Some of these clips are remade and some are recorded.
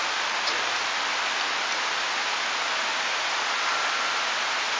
recorded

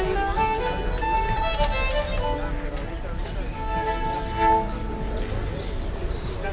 recorded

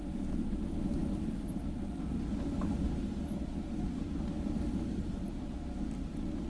recorded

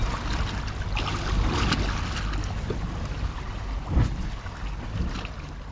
recorded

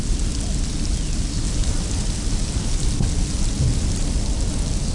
recorded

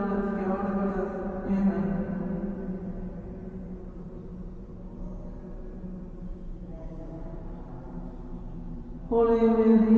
recorded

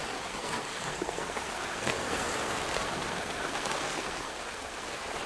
remade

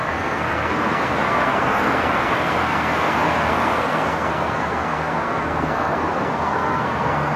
remade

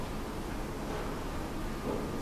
recorded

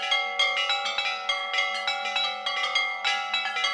recorded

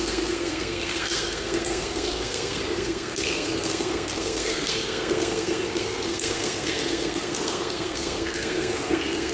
remade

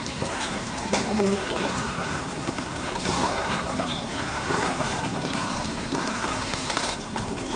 remade